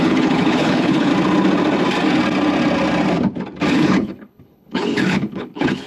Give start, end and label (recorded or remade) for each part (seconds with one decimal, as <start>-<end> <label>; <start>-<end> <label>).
0.0-1.1 remade; 1.1-3.7 recorded; 3.7-5.9 remade